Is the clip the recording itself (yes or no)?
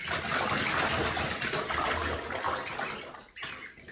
yes